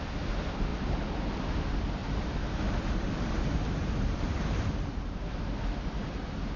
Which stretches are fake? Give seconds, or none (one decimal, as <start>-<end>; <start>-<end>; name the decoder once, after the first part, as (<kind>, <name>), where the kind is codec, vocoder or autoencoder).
0.7-1.5 (vocoder, BigVGAN v2); 2.0-5.4